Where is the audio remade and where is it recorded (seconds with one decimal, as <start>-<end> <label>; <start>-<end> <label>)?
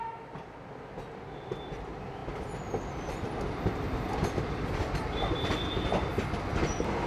0.0-7.1 recorded